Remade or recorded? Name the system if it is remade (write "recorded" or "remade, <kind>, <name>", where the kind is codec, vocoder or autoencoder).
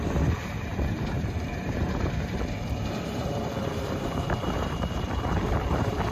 remade, vocoder, BigVGAN v2